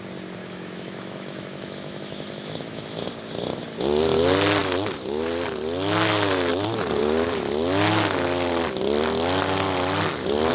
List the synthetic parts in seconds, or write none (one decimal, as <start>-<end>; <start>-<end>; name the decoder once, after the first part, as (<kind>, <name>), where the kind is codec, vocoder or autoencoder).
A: 0.4-3.1 (autoencoder, DAC-VAE)